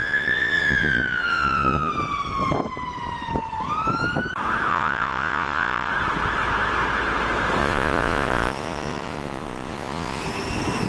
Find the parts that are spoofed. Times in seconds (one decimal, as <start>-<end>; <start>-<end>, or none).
0.0-1.9; 4.7-5.9; 7.6-10.2

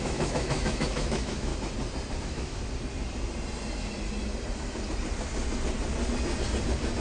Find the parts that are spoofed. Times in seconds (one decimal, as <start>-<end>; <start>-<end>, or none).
0.0-1.5; 2.2-2.6

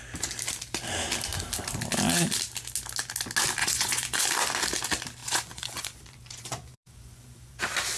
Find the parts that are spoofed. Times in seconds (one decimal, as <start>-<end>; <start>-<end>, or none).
3.6-4.2; 5.2-7.6

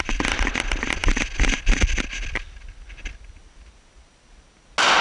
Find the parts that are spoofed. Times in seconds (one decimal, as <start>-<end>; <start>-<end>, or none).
none

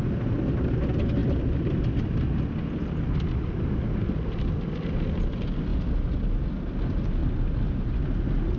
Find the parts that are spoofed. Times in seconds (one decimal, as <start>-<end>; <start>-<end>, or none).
none

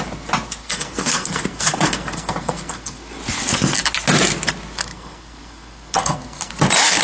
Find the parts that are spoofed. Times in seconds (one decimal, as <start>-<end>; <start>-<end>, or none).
0.6-3.2; 4.9-6.5